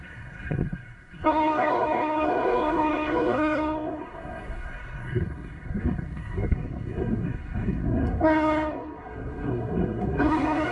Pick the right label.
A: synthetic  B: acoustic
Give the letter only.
A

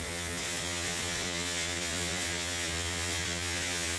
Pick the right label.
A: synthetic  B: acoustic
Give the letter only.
A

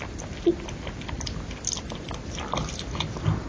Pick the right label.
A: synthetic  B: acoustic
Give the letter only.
B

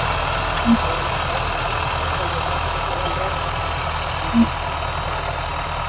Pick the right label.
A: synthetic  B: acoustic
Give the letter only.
B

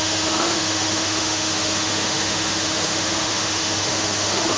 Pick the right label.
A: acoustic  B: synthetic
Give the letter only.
B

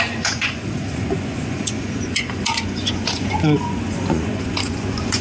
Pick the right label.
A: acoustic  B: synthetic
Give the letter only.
B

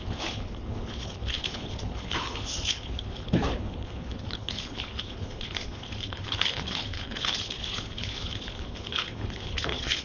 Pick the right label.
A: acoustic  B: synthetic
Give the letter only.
B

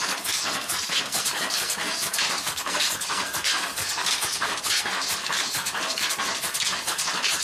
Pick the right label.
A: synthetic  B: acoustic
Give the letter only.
A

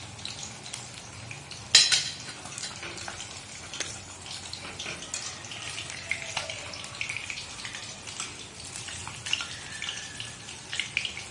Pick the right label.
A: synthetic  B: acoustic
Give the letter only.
B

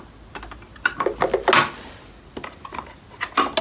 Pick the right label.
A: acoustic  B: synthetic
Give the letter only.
A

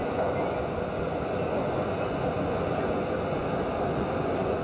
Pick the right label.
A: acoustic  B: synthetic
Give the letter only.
B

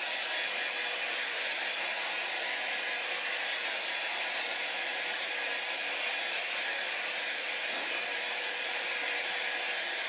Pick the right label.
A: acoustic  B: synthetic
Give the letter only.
B